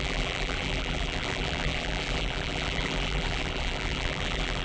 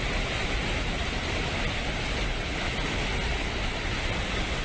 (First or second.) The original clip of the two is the second